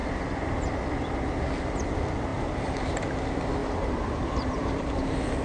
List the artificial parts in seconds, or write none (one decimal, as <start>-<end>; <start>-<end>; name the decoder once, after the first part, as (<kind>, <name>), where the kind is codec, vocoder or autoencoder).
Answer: 0.0-0.7 (vocoder, BigVGAN v2); 2.3-3.0; 3.6-5.0